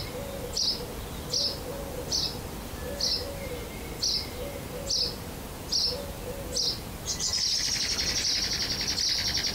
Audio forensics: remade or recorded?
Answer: recorded